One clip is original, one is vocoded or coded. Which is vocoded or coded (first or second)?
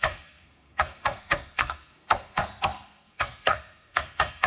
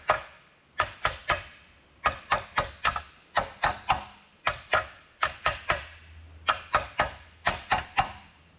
first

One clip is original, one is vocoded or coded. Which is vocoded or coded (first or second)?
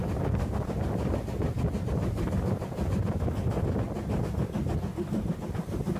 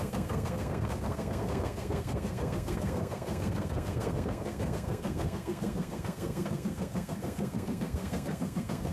second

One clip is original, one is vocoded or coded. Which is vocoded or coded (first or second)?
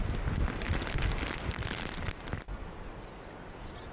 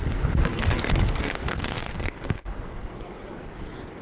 second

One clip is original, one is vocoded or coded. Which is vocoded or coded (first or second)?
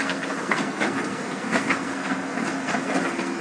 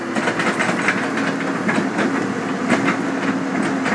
first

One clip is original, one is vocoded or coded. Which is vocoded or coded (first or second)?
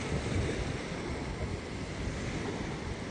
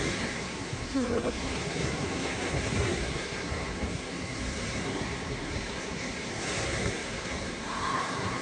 second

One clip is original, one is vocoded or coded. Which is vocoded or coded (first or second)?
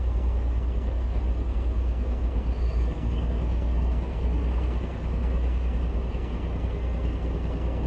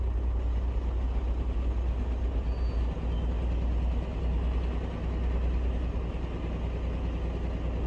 first